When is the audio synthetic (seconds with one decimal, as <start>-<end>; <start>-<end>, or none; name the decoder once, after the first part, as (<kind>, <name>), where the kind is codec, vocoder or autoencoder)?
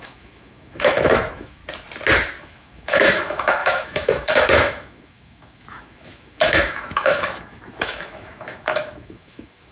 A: 0.0-1.6 (autoencoder, DAC-VAE); 2.4-9.7